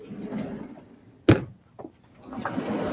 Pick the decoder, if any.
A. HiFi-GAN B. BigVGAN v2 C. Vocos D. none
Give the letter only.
D